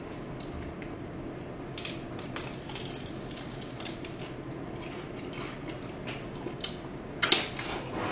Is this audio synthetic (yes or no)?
no